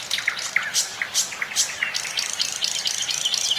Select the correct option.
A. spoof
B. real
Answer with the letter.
B